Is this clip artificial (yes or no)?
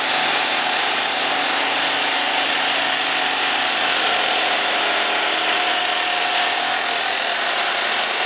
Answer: no